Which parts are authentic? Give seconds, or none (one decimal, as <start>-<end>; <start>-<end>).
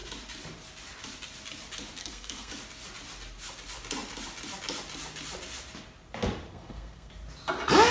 0.0-2.0; 2.5-6.5; 7.1-7.9